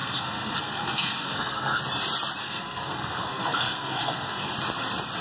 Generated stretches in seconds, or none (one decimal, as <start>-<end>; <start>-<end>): 0.0-1.8; 2.4-4.5